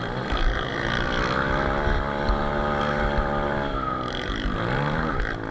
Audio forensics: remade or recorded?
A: remade